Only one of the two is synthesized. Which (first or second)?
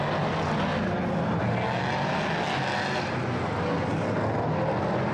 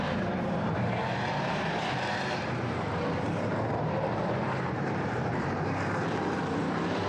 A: second